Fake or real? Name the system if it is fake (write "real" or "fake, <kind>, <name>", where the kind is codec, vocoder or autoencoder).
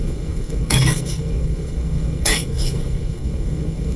fake, codec, SNAC